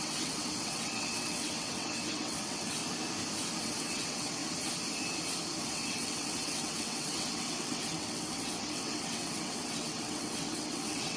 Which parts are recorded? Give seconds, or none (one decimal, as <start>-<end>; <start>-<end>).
2.8-3.6; 4.4-5.6